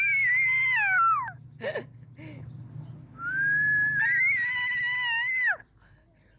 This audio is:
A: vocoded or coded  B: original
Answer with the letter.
B